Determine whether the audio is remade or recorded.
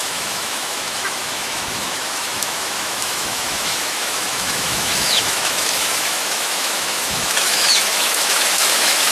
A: remade